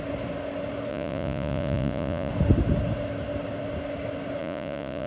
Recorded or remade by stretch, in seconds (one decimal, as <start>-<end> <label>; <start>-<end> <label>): 0.0-0.9 recorded; 0.9-2.3 remade; 2.3-4.4 recorded; 4.4-5.1 remade